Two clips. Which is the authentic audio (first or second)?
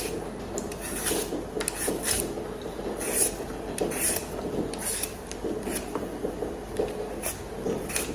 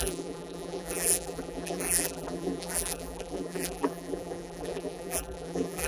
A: first